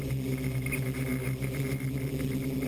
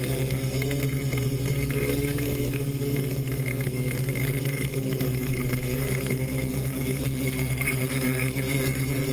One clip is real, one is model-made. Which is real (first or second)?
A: first